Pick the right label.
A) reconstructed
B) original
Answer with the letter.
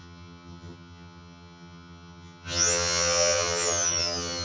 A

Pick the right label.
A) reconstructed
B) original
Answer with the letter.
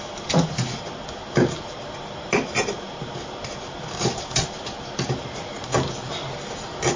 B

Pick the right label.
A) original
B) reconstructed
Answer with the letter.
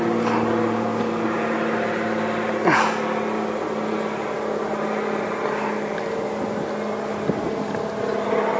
A